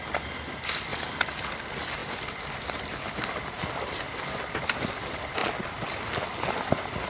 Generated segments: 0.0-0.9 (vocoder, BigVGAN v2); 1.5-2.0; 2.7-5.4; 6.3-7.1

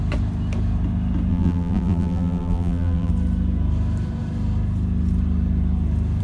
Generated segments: 1.3-3.1 (vocoder, BigVGAN v2)

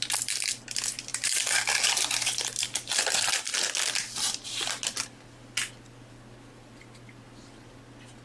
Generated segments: 1.1-3.5 (vocoder, BigVGAN v2)

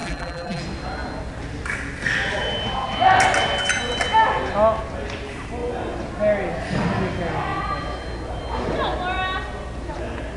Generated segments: 0.0-0.6 (vocoder, BigVGAN v2)